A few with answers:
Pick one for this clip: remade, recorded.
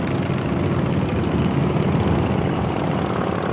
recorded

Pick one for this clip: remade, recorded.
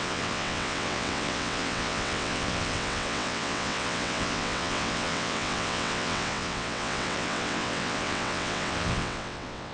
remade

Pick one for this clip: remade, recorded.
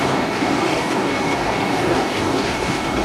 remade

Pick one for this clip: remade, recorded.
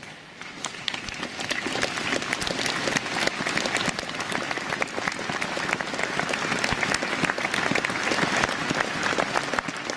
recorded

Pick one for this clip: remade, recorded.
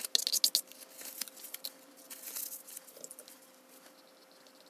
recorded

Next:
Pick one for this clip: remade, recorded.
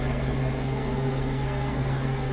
remade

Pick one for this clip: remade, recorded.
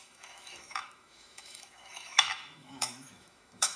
remade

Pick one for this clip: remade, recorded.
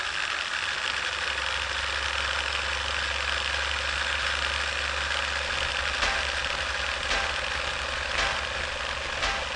recorded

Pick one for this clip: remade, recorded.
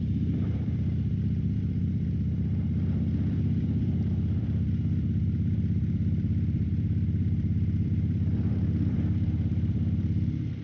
remade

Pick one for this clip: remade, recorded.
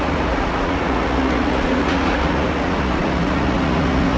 remade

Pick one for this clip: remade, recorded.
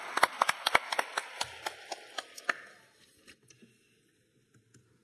recorded